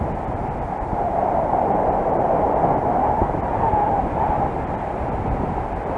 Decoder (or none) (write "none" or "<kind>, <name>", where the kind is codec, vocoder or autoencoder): none